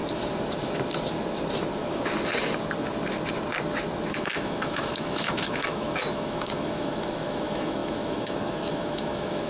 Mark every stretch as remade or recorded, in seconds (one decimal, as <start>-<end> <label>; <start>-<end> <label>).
0.0-4.1 recorded; 4.1-9.5 remade